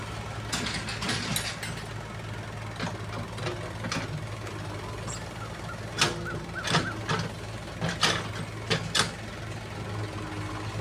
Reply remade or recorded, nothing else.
recorded